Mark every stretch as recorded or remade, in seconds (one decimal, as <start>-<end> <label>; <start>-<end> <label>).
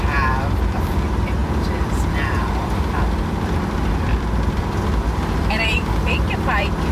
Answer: 0.0-6.9 remade